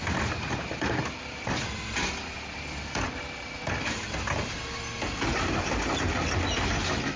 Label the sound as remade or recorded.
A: recorded